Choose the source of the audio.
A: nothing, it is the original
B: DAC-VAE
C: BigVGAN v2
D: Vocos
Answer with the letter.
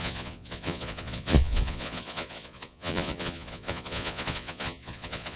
D